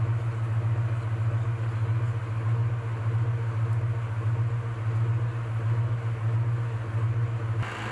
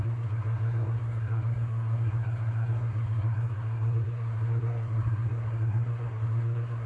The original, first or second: first